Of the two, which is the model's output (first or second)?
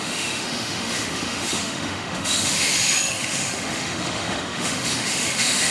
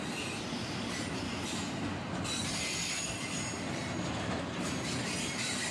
first